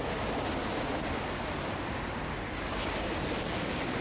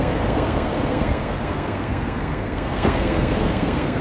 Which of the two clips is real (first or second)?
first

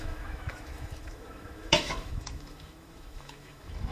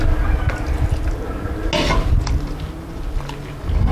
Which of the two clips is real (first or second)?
second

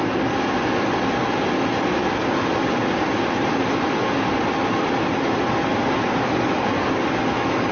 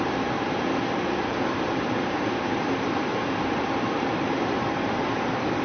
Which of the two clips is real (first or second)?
first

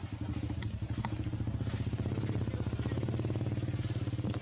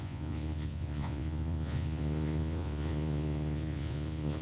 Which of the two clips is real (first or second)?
first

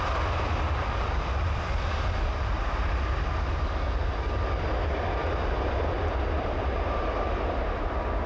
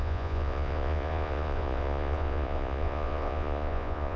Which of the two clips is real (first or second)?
first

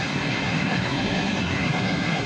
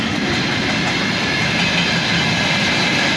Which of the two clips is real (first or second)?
second